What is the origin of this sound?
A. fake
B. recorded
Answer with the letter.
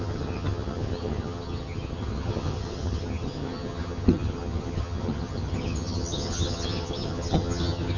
A